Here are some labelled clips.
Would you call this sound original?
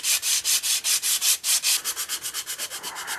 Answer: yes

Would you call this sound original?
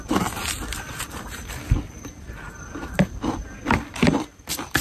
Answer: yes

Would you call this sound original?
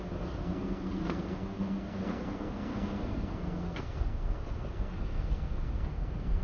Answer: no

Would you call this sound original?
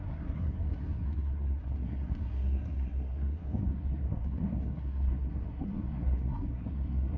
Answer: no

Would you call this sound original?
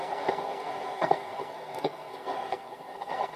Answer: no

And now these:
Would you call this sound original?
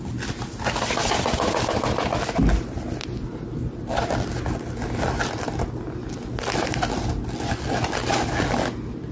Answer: yes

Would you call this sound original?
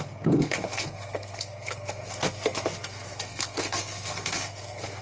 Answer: no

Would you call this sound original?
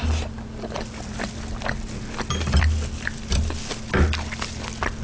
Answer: yes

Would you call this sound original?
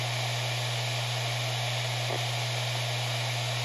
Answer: yes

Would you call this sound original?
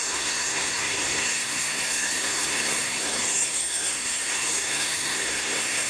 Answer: no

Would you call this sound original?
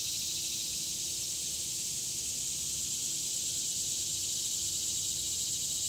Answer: yes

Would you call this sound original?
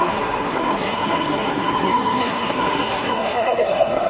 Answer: no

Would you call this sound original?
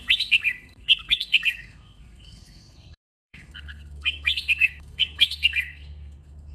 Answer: no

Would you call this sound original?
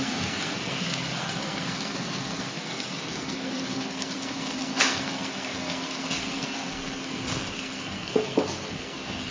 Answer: no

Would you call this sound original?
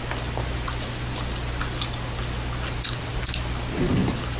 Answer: yes